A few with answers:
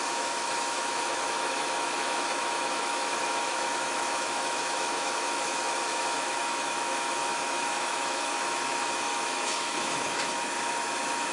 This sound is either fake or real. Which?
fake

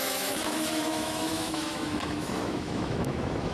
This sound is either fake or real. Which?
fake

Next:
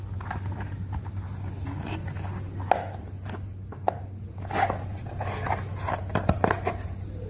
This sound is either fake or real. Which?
real